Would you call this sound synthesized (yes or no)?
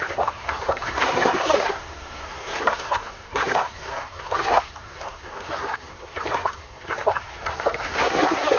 yes